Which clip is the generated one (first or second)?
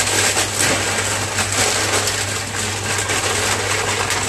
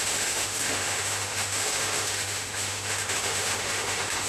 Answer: second